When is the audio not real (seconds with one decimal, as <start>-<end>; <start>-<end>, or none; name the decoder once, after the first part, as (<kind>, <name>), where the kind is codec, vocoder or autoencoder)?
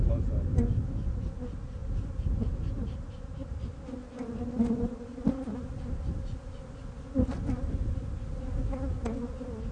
1.8-3.7 (vocoder, BigVGAN v2)